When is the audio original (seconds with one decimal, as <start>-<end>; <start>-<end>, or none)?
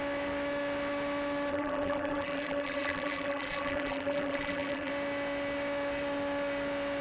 0.0-1.5; 4.9-7.0